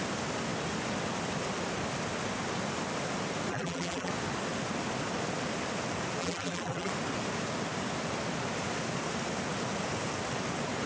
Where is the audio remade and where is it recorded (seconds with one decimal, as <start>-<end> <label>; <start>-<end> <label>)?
0.0-3.5 recorded; 3.5-4.1 remade; 4.1-6.2 recorded; 6.2-6.9 remade; 6.9-10.9 recorded